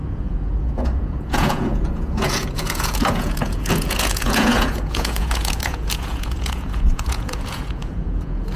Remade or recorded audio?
remade